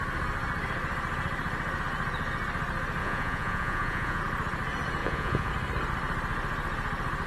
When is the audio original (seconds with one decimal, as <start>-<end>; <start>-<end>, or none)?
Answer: 0.0-3.0; 4.2-5.0; 5.5-7.3